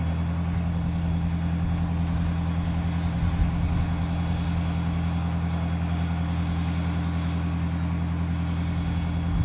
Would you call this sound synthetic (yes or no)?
no